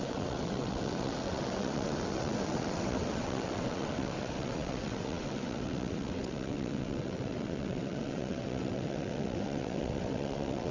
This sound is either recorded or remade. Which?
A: remade